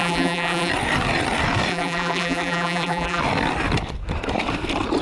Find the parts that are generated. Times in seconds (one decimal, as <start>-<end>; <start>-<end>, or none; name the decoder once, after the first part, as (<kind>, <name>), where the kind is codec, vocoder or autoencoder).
0.0-0.7 (vocoder, BigVGAN v2); 1.7-3.2